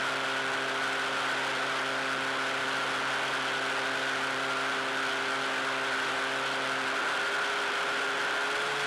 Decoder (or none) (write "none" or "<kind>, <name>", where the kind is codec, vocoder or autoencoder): none